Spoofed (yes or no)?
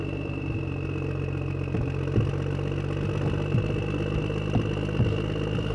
no